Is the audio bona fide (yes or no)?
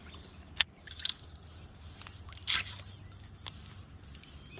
yes